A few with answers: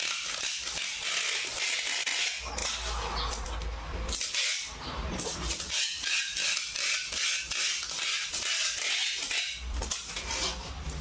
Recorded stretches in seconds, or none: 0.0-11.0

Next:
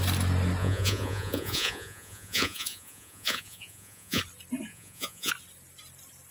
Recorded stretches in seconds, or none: 0.0-0.6; 4.2-4.7; 5.3-6.3

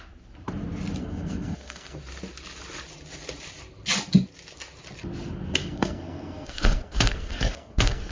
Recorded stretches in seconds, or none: 0.0-1.0; 2.0-5.6

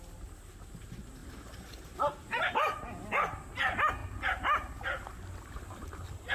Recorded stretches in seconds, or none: 0.0-6.3